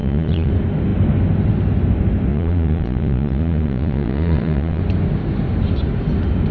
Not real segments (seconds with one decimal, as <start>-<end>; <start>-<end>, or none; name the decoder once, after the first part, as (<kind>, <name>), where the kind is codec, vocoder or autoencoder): 0.0-0.5 (vocoder, Vocos); 2.3-4.8